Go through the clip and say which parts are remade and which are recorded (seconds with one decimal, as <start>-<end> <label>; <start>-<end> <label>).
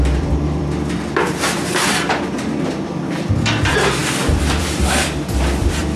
0.0-6.0 remade